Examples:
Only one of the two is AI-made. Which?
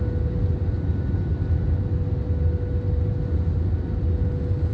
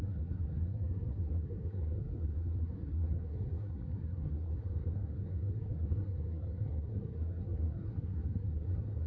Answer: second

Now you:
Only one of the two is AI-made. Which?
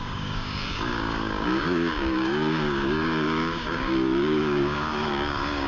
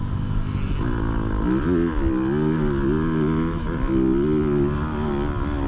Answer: first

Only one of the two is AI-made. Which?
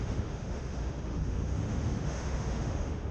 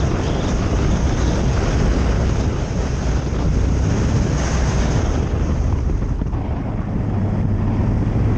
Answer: first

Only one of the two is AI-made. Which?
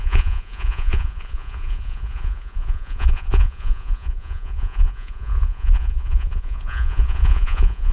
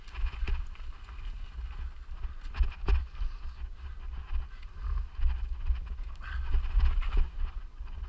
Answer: first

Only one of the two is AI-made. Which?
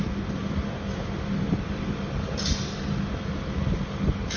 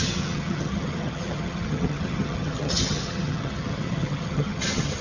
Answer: second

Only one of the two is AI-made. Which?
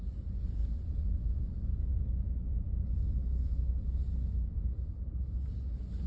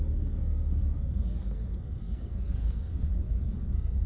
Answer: second